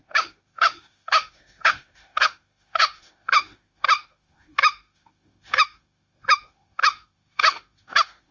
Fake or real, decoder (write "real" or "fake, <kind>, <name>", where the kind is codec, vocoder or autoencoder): fake, autoencoder, DAC-VAE